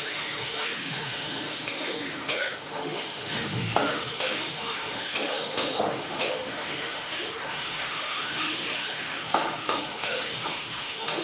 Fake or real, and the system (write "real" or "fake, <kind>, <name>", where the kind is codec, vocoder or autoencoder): fake, autoencoder, DAC-VAE